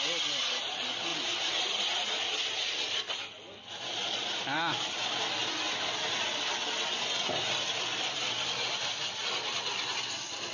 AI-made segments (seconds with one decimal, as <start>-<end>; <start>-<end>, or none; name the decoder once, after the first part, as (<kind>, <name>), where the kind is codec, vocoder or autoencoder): none